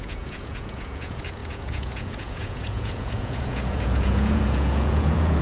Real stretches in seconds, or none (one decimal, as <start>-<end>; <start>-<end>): none